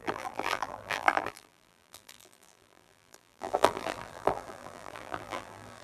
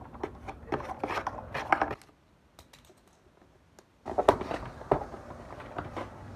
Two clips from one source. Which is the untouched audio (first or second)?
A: second